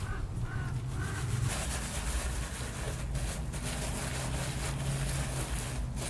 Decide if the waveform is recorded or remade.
recorded